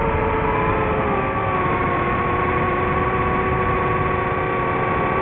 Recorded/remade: recorded